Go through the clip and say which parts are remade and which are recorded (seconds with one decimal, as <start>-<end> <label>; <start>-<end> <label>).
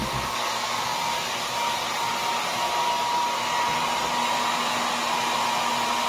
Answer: 0.0-6.1 recorded